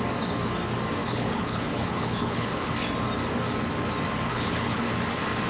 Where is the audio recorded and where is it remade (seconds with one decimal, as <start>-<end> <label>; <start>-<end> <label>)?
0.0-1.0 recorded; 1.0-2.7 remade; 2.7-4.3 recorded; 4.3-4.9 remade; 4.9-5.5 recorded